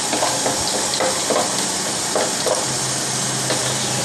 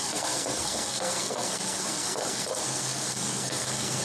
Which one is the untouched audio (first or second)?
first